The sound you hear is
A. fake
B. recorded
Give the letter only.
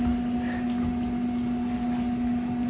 B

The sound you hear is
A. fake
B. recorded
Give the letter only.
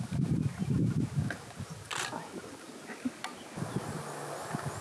B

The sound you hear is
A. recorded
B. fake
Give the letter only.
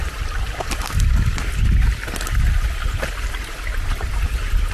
A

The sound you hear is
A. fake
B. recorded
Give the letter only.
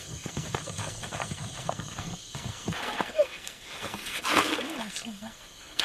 A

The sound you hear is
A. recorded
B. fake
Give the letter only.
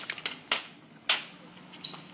A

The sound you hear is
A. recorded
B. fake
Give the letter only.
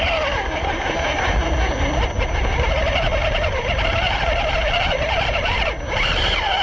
A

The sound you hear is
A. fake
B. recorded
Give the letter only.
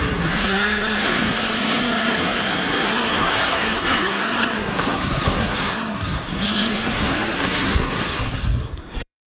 A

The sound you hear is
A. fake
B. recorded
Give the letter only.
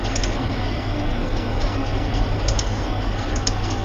A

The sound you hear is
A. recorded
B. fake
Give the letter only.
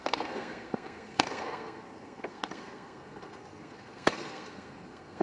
B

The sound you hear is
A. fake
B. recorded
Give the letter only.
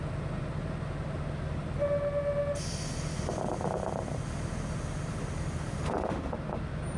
B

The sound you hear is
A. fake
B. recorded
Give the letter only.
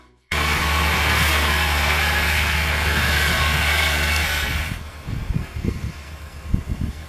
A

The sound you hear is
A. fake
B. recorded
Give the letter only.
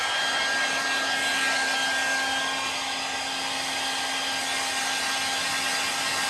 B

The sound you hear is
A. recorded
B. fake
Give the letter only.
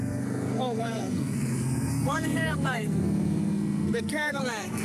B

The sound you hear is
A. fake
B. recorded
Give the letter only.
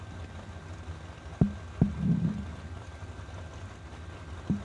B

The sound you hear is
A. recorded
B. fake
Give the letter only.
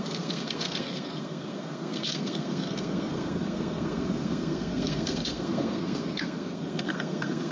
B